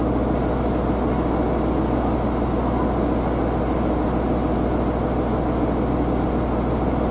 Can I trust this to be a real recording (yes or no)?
yes